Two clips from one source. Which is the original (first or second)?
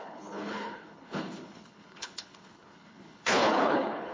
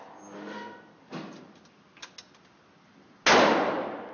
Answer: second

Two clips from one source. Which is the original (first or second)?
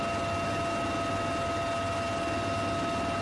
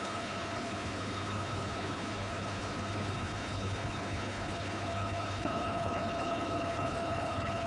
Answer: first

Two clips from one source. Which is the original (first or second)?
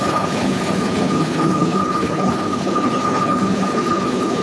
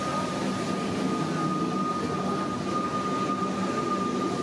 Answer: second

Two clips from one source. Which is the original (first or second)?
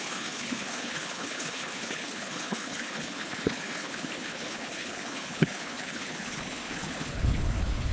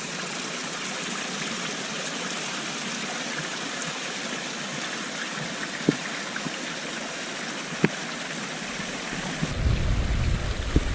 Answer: second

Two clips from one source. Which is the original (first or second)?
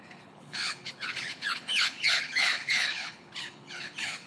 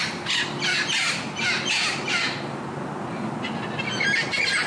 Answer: second